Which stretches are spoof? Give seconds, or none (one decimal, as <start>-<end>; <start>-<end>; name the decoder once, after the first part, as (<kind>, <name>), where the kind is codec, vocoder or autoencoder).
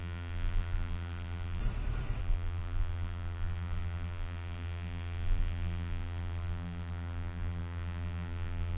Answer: 0.0-1.6 (vocoder, BigVGAN v2); 2.2-8.8